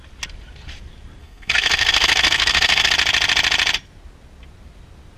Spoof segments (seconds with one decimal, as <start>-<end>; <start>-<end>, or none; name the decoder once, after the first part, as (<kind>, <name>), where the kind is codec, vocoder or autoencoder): 1.2-2.9 (codec, SNAC)